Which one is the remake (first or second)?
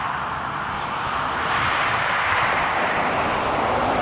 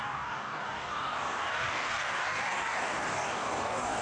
second